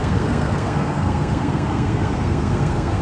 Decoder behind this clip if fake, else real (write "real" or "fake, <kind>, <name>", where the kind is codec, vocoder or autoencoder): fake, codec, SNAC